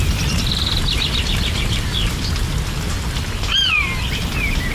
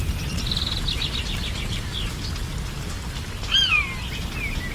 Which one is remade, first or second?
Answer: first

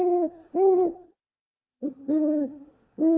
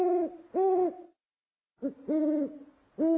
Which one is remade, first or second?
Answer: first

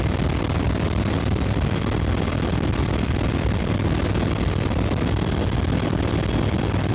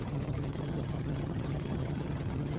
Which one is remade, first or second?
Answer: second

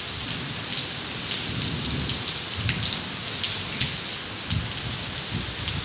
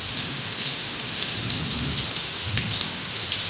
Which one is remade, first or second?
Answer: second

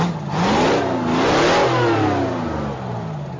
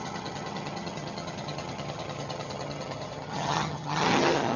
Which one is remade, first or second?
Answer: second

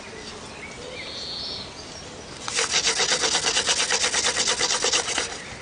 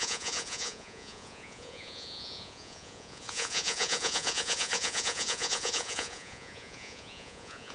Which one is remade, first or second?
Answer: second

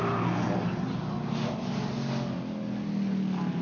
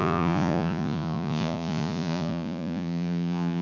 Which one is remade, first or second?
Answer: second